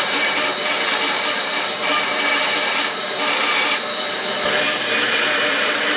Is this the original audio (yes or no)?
no